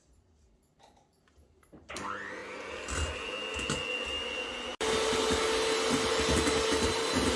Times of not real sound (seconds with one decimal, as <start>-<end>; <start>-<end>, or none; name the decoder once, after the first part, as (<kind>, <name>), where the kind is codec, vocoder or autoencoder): 0.0-2.4 (vocoder, BigVGAN v2); 6.8-7.4